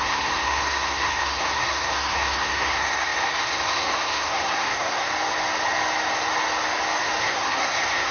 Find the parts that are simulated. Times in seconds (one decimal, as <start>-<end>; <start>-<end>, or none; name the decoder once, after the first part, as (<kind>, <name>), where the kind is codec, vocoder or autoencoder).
0.0-5.1 (codec, SNAC); 7.2-8.1